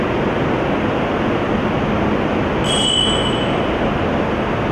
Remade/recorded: recorded